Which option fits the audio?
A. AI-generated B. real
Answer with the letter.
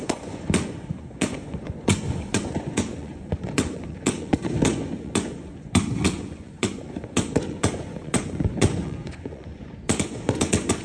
A